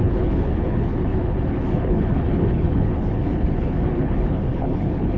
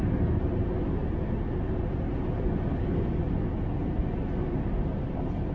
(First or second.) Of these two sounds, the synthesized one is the first